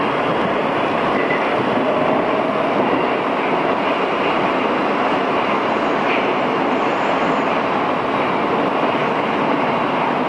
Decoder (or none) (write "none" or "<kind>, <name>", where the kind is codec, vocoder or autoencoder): none